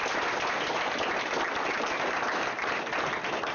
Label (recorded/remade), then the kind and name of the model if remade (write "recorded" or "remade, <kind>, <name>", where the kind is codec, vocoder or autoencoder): recorded